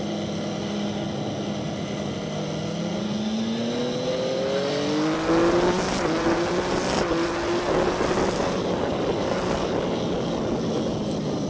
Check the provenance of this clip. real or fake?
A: real